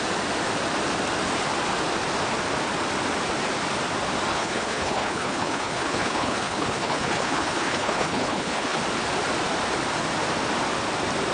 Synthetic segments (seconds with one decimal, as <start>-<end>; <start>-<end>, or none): 4.3-8.8